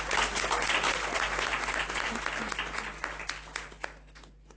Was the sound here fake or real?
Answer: real